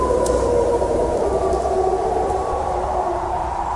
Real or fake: fake